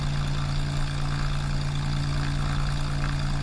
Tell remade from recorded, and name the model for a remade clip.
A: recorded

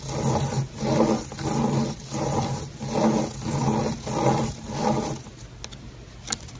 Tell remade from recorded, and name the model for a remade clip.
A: recorded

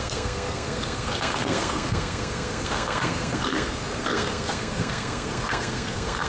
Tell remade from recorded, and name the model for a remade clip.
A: remade, codec, SNAC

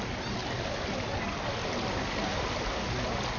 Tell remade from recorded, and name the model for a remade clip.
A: recorded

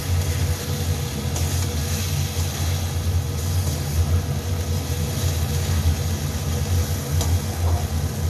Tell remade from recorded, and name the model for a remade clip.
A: recorded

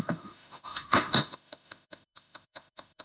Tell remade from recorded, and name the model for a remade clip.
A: remade, autoencoder, DAC-VAE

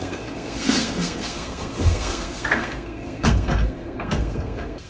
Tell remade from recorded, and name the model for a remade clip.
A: remade, codec, SNAC